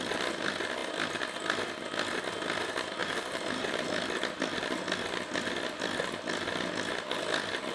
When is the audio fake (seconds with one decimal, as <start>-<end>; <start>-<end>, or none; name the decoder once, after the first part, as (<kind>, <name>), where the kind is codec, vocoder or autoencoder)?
3.0-3.8 (vocoder, BigVGAN v2)